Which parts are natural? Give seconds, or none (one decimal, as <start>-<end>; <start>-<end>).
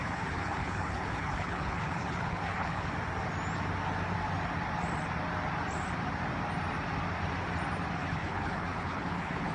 2.9-8.0